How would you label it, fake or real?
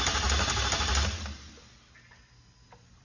real